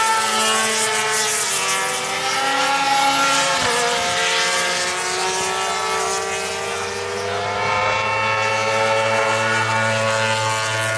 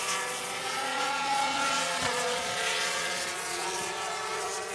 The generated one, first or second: second